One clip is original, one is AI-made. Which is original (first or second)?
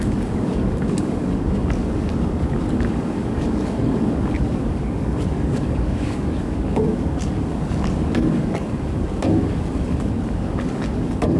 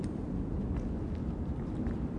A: second